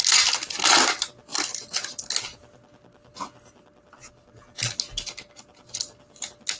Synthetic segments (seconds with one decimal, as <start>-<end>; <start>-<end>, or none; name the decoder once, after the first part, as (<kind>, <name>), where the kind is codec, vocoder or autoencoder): none

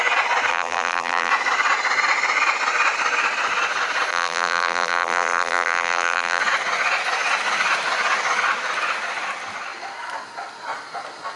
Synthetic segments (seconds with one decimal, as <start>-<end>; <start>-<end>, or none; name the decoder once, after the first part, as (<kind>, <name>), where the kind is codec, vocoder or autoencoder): 0.5-1.3 (vocoder, BigVGAN v2); 4.1-6.4

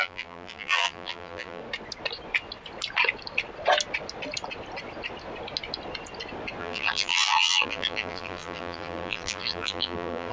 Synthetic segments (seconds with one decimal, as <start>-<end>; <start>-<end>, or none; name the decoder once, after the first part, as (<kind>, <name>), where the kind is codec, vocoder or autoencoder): 0.0-1.6 (vocoder, BigVGAN v2); 6.6-10.3

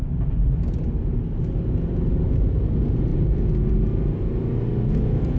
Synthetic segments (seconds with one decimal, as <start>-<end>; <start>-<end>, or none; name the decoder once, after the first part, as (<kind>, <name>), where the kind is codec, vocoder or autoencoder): 3.1-4.5 (vocoder, BigVGAN v2)

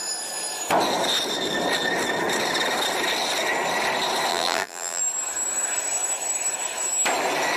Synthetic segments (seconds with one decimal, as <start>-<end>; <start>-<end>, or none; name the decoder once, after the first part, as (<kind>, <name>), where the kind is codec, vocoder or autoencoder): 4.3-5.0 (vocoder, BigVGAN v2)